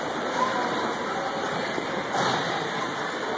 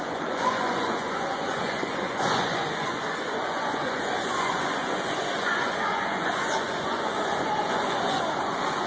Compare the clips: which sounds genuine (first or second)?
first